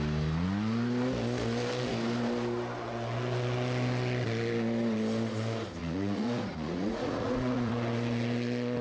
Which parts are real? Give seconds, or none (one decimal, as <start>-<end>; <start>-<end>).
0.0-5.8; 7.7-8.8